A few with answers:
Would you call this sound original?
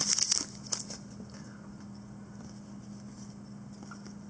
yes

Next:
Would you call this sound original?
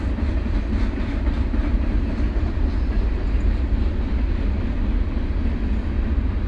yes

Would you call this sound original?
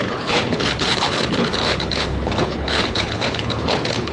no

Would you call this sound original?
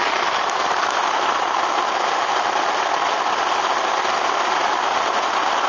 yes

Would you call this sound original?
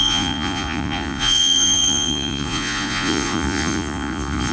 no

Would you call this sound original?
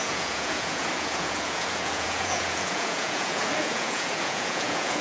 no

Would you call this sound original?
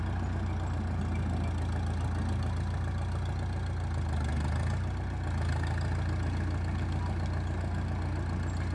yes